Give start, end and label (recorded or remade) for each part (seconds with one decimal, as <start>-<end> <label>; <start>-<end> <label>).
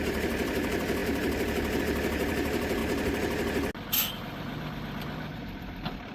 0.0-2.8 remade; 2.8-4.2 recorded; 4.2-6.1 remade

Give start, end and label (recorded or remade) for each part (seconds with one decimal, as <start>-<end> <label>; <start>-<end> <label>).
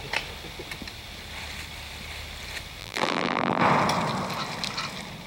0.0-2.8 recorded; 2.8-3.6 remade; 3.6-5.3 recorded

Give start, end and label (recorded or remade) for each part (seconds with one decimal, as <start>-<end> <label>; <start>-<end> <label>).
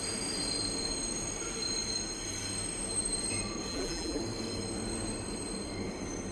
0.0-3.7 recorded; 3.7-4.2 remade; 4.2-6.3 recorded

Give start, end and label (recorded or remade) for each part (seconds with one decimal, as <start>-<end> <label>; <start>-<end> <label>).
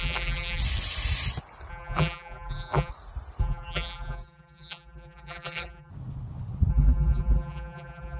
0.0-0.6 remade; 0.6-1.7 recorded; 1.7-2.9 remade; 2.9-3.4 recorded; 3.4-5.9 remade; 5.9-6.7 recorded; 6.7-8.2 remade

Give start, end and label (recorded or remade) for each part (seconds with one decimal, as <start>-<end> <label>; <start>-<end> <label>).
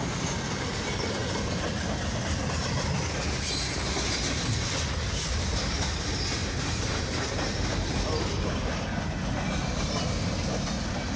0.0-6.4 recorded; 6.4-8.6 remade; 8.6-11.2 recorded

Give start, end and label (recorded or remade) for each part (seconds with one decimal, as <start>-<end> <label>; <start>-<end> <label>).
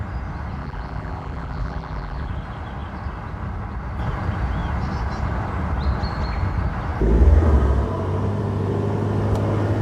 0.0-0.6 recorded; 0.6-2.3 remade; 2.3-9.8 recorded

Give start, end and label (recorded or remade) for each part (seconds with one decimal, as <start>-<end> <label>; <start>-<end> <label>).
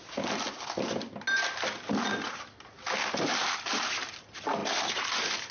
0.0-3.3 recorded; 3.3-4.6 remade; 4.6-5.5 recorded